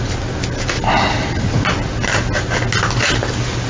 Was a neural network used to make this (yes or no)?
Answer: no